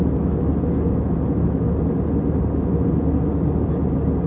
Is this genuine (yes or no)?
yes